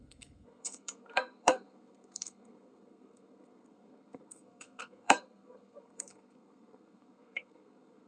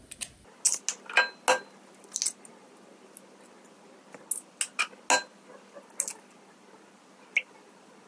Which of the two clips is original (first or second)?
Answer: second